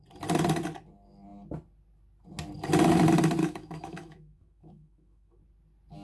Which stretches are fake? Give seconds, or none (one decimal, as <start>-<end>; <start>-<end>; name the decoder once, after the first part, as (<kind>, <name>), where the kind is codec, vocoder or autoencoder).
3.4-5.4 (autoencoder, DAC-VAE)